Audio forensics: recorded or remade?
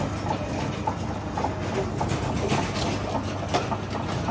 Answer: recorded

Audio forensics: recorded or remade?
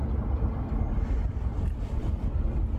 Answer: recorded